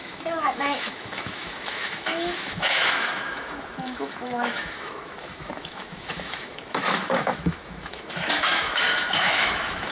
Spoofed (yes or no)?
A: yes